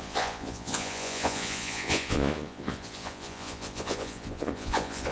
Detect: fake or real fake